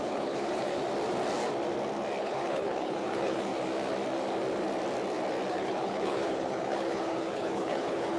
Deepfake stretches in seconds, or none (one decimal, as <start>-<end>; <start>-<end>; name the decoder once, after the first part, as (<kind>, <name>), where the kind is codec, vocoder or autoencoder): 0.0-0.7 (codec, HILCodec); 2.2-3.5; 5.5-8.2